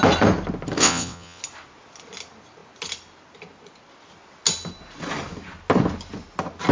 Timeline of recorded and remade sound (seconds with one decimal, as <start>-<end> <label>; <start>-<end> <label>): 0.0-0.8 recorded; 0.8-1.4 remade; 1.4-6.7 recorded